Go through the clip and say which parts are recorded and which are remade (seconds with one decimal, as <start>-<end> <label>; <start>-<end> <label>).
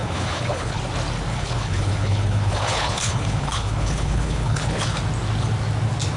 0.0-0.8 remade; 0.8-1.3 recorded; 1.3-5.0 remade; 5.0-6.2 recorded